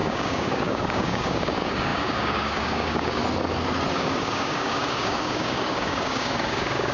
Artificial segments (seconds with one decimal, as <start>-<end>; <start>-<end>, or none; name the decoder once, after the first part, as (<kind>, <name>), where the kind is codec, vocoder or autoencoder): 0.0-3.2 (codec, DAC); 3.9-6.9